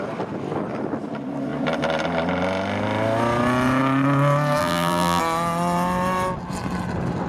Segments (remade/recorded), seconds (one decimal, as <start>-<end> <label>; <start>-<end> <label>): 0.0-4.6 recorded; 4.6-5.2 remade; 5.2-7.3 recorded